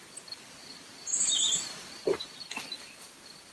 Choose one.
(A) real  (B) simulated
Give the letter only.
A